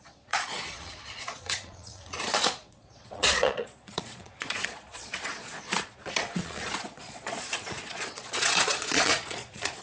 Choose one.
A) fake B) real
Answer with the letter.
A